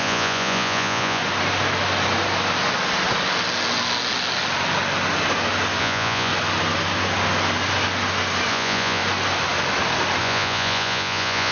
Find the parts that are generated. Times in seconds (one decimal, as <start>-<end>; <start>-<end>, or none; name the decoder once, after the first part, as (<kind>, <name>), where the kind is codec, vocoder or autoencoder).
0.0-1.2 (vocoder, Vocos); 5.8-6.3; 8.5-9.0; 10.2-11.5